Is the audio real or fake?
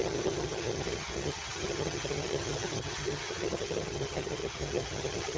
fake